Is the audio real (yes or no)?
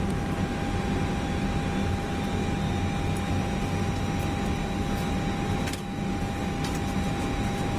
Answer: yes